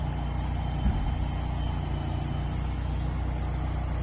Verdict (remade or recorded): recorded